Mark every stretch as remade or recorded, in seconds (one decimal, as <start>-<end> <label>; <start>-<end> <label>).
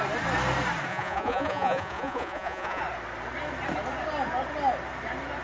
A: 0.0-0.9 recorded; 0.9-2.8 remade; 2.8-5.4 recorded